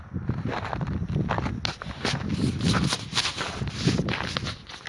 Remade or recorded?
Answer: recorded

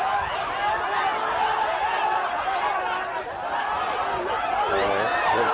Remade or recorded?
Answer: recorded